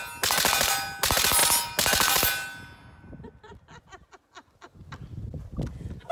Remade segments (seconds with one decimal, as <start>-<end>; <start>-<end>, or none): none

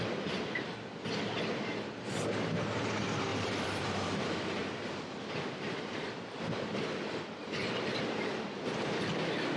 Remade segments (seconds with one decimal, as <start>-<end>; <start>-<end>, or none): 3.3-4.0; 4.6-7.4; 8.3-9.1

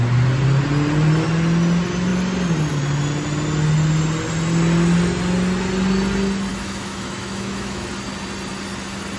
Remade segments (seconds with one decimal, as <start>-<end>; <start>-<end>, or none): 6.5-7.9

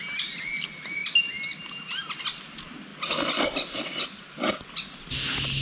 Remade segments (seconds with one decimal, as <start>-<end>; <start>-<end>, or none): none

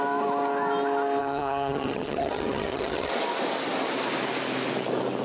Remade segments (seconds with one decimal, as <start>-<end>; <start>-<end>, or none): 1.2-3.1

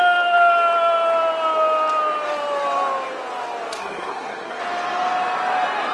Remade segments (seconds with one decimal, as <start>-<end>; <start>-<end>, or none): 3.8-4.6

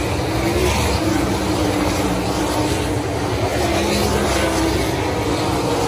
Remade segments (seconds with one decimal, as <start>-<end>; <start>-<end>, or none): 0.6-2.4